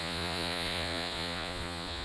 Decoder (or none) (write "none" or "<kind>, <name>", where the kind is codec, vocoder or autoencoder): vocoder, Vocos